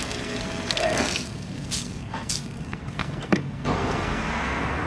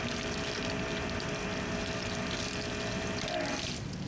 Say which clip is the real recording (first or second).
second